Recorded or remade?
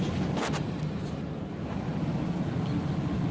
recorded